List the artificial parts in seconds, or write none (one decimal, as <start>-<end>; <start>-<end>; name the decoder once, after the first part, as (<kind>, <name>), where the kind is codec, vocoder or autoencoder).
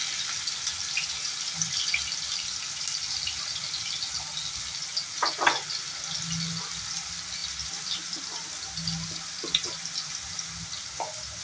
none